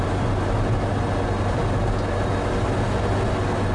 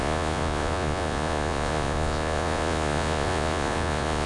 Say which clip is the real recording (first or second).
first